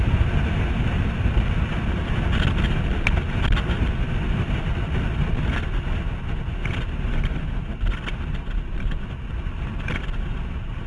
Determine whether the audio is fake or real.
real